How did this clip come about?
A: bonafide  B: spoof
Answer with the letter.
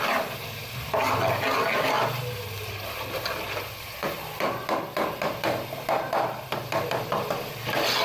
A